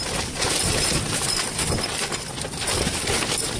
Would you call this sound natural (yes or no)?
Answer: yes